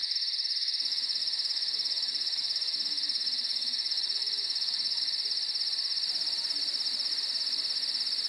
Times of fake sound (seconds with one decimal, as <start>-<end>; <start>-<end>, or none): 0.0-5.0